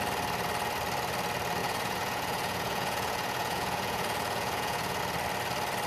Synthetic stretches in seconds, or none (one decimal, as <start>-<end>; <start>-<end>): 1.6-5.0